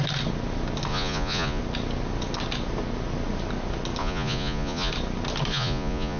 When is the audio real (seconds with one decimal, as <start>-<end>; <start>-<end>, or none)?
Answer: 0.0-0.9; 1.6-4.0; 4.9-5.5